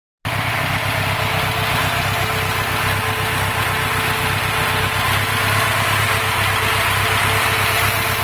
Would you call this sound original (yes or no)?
yes